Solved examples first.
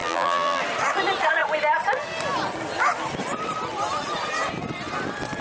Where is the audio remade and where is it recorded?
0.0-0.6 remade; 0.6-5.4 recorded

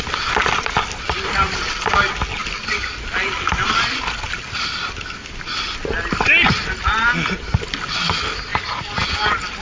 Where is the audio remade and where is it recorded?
0.0-0.4 recorded; 0.4-1.2 remade; 1.2-2.4 recorded; 2.4-5.4 remade; 5.4-9.6 recorded

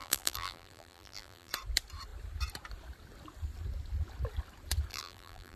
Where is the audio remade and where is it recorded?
0.0-1.5 remade; 1.5-4.9 recorded; 4.9-5.6 remade

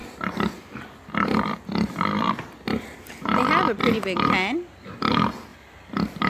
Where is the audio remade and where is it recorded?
0.0-5.5 recorded; 5.5-6.3 remade

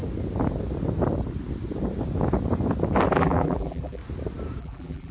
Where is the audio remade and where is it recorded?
0.0-3.1 recorded; 3.1-4.0 remade; 4.0-4.6 recorded; 4.6-5.1 remade

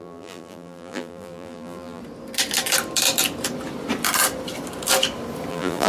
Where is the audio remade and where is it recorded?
0.0-2.0 remade; 2.0-5.5 recorded; 5.5-5.9 remade